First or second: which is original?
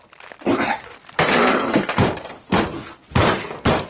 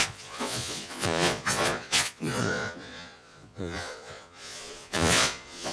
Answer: first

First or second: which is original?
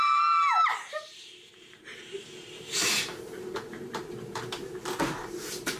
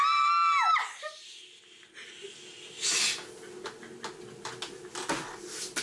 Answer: second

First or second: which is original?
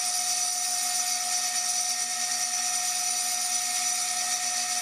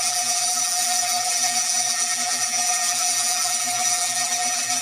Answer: first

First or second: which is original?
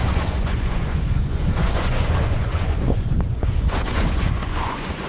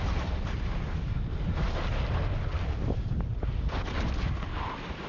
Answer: second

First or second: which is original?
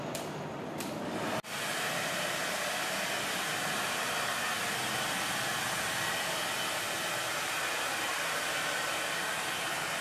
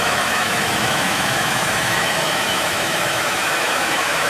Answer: first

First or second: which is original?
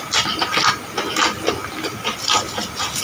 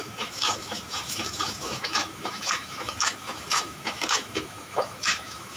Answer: first